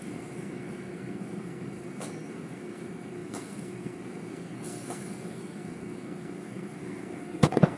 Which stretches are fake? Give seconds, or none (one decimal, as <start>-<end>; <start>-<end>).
0.0-7.8

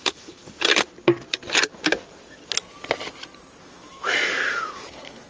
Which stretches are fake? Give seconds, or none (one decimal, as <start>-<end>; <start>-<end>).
0.0-0.4; 3.6-5.3